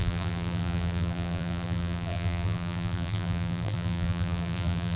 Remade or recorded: remade